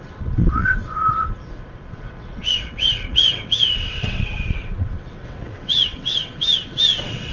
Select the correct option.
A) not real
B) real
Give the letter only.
A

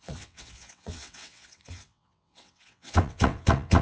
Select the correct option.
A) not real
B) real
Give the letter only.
A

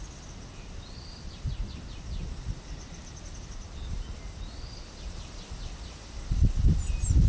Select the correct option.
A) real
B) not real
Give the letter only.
A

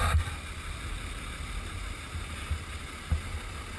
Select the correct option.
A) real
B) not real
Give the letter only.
A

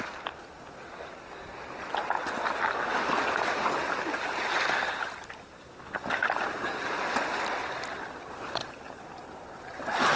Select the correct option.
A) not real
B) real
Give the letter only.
B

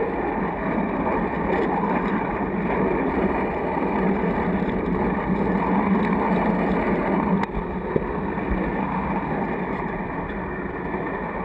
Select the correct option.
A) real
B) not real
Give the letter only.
A